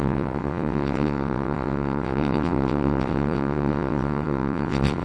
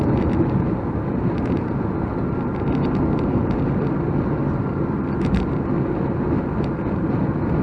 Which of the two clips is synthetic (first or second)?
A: first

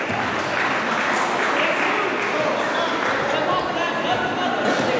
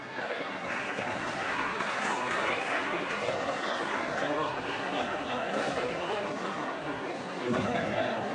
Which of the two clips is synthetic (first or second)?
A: second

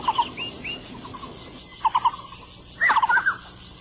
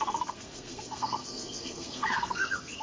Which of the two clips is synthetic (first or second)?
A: second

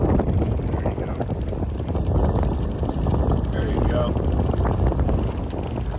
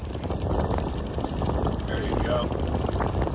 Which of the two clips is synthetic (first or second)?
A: second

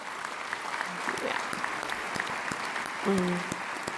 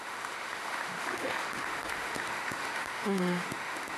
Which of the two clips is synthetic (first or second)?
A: second